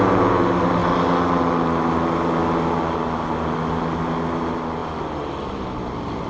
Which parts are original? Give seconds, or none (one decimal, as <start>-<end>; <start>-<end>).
0.0-6.3